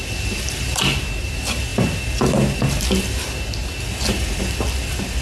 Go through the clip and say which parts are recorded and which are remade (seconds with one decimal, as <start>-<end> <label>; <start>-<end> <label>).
0.0-5.2 recorded